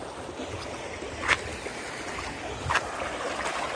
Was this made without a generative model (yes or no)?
yes